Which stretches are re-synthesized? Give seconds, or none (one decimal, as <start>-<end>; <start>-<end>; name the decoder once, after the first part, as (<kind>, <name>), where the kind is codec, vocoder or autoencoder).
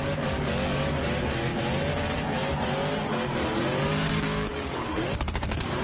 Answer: 0.0-1.5 (codec, DAC); 3.0-5.8